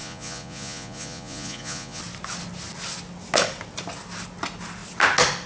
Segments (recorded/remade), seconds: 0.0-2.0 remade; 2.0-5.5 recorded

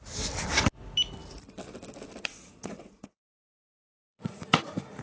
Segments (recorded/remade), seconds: 0.0-2.3 recorded; 2.3-5.0 remade

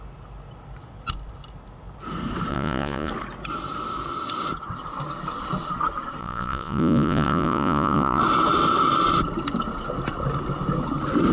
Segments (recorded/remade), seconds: 0.0-2.5 recorded; 2.5-3.1 remade; 3.1-6.2 recorded; 6.2-8.2 remade; 8.2-11.3 recorded

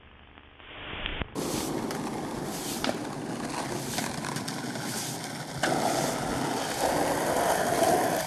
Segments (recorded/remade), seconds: 0.0-8.3 recorded